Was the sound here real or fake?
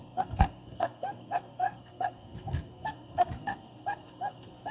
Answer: fake